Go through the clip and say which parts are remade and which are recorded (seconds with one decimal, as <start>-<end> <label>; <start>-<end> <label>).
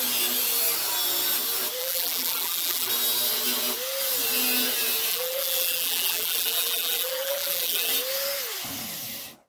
0.0-1.8 recorded; 1.8-2.9 remade; 2.9-5.1 recorded; 5.1-7.9 remade; 7.9-9.5 recorded